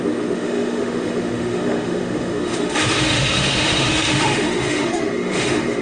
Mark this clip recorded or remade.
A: remade